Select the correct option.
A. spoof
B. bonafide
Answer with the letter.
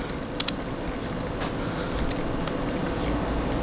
B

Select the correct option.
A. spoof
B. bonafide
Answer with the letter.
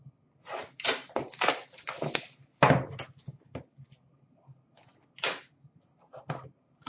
B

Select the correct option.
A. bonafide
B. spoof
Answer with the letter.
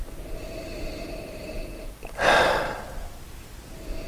B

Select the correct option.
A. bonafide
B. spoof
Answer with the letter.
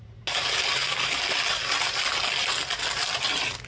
A